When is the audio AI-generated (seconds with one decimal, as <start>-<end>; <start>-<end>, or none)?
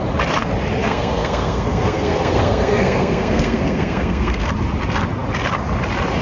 0.8-4.5